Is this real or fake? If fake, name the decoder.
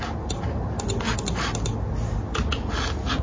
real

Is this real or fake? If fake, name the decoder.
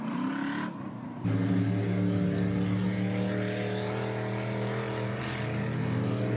real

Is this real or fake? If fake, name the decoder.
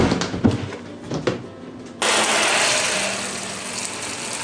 real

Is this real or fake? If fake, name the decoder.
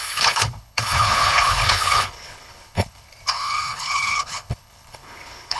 fake, codec, HILCodec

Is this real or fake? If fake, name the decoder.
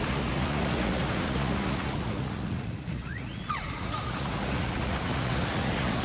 fake, vocoder, Vocos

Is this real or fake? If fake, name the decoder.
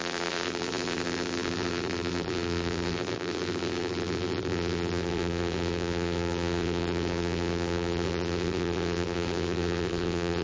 fake, vocoder, BigVGAN v2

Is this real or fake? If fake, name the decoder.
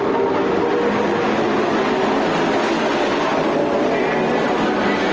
real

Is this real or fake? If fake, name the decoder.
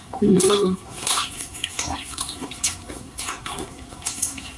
fake, codec, SNAC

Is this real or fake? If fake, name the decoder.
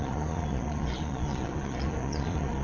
fake, vocoder, Vocos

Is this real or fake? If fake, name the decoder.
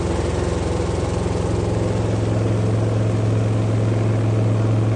real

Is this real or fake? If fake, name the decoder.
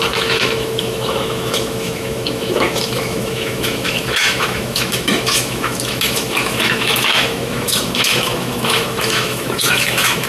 fake, autoencoder, DAC-VAE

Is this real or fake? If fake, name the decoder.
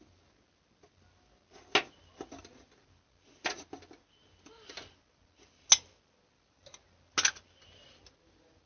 real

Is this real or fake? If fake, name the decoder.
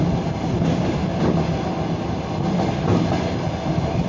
real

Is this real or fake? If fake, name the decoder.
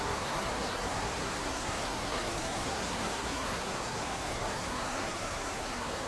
fake, codec, SNAC